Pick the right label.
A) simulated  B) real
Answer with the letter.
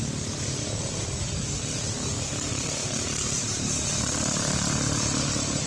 B